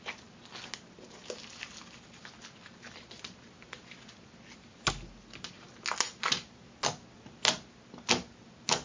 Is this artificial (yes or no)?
no